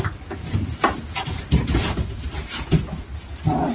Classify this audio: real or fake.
real